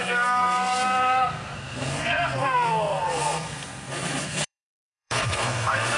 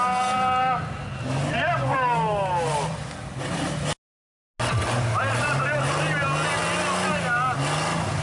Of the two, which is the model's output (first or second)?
first